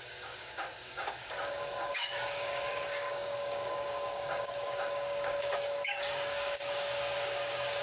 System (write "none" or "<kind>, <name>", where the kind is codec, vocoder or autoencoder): codec, DAC